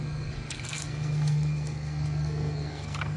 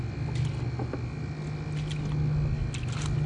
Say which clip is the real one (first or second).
second